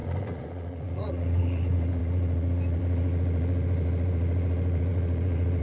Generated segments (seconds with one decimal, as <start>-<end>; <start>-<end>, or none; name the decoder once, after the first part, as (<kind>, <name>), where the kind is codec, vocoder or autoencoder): 0.0-5.6 (vocoder, Vocos)